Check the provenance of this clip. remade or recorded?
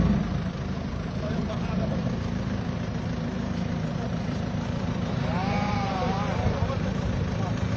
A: remade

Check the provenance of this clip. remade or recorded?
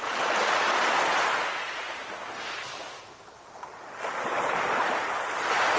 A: recorded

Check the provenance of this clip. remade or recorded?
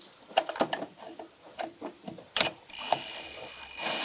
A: remade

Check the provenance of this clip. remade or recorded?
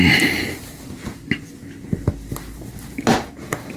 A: recorded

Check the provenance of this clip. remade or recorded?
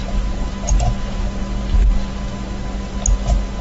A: recorded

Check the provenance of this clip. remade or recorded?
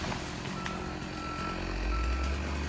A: recorded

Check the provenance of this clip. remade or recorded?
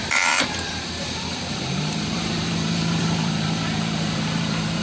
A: remade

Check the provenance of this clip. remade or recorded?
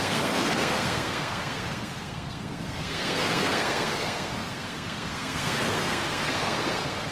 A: remade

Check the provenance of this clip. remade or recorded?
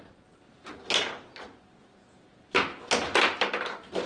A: recorded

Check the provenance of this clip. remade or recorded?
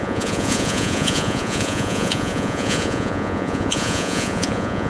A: remade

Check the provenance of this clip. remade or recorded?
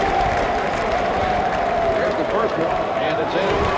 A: remade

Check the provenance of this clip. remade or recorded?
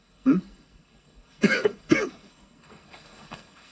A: remade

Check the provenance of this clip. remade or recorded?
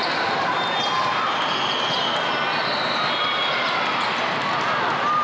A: recorded